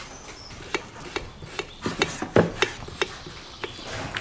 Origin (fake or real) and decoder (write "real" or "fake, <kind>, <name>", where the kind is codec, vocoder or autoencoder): real